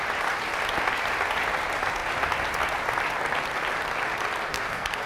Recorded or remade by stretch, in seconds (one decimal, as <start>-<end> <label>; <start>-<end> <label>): 0.0-4.5 recorded; 4.5-5.1 remade